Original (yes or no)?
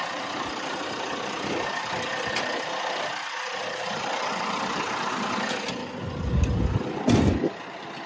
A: yes